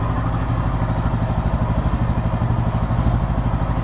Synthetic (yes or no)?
no